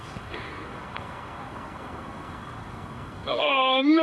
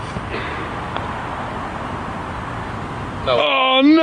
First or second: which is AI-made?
first